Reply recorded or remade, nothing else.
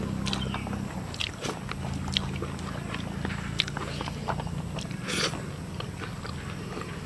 recorded